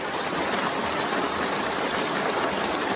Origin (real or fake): fake